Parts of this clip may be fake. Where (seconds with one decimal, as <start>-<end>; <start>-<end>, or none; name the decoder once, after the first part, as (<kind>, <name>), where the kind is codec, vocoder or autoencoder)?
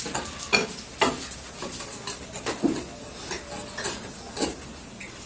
none